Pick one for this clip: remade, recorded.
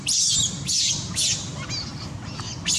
recorded